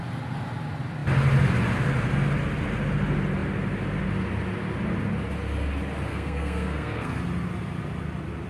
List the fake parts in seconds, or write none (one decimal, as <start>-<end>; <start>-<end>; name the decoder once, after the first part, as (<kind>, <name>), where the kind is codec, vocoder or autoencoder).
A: 6.1-7.2 (codec, SNAC)